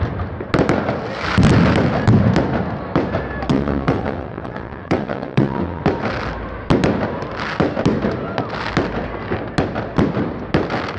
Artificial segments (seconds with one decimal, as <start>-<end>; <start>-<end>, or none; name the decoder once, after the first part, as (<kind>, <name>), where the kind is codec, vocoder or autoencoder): 3.5-5.8 (vocoder, WaveNeXt)